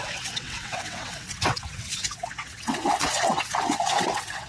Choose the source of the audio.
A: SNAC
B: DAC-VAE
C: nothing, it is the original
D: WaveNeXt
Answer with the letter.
D